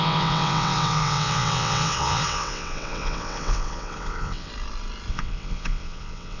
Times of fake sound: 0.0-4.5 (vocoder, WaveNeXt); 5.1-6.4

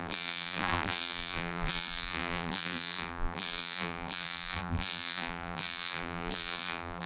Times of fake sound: 0.0-7.1 (vocoder, BigVGAN v2)

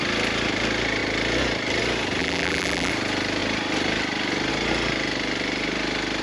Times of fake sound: 2.2-2.9 (vocoder, BigVGAN v2)

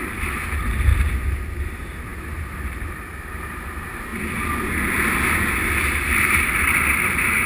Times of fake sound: 0.0-0.9 (vocoder, BigVGAN v2); 1.6-4.1; 5.8-7.5

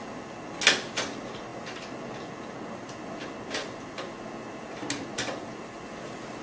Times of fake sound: none

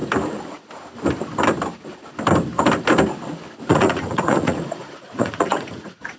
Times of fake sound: 3.7-6.2 (vocoder, Vocos)